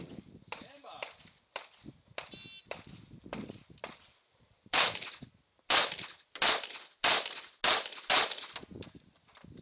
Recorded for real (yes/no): yes